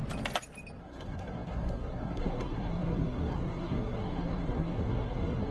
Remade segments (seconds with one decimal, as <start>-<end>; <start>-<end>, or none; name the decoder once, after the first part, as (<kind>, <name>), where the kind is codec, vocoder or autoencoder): 0.8-5.5 (codec, SNAC)